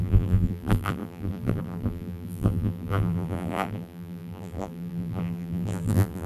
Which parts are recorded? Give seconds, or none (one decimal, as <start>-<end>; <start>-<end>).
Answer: none